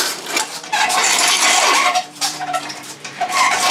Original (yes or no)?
no